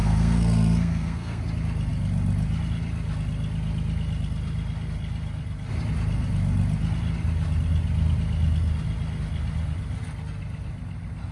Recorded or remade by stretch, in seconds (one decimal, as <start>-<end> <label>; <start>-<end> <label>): 0.0-1.4 remade; 1.4-11.3 recorded